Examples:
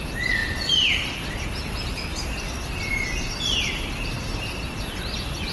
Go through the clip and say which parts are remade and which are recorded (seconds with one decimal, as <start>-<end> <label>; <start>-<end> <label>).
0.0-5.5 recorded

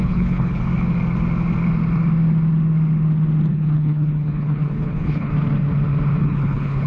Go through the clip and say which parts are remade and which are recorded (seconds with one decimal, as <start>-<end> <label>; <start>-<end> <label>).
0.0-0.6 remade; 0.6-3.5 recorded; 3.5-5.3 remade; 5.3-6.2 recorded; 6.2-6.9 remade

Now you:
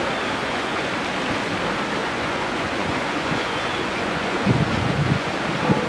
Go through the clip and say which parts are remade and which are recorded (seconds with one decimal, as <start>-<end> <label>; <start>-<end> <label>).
0.0-0.4 recorded; 0.4-0.9 remade; 0.9-2.0 recorded; 2.0-5.3 remade; 5.3-5.9 recorded

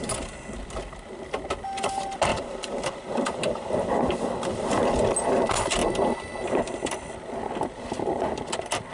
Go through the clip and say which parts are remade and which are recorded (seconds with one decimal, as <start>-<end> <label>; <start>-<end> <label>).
0.0-2.3 recorded; 2.3-3.9 remade; 3.9-5.8 recorded; 5.8-6.6 remade; 6.6-8.9 recorded